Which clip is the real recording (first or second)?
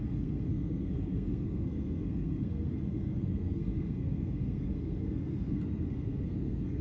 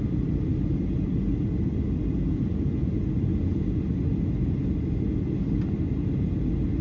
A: second